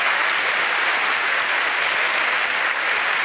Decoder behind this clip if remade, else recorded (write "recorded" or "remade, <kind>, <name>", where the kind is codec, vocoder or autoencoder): recorded